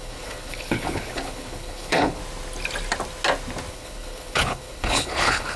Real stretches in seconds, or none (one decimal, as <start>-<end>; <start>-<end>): 2.2-3.7